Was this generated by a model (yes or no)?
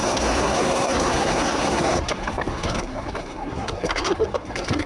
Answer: yes